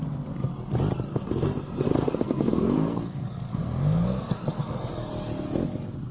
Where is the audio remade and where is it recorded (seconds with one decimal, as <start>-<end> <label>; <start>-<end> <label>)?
0.0-1.1 recorded; 1.1-4.8 remade; 4.8-6.1 recorded